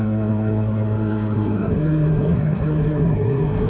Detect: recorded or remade remade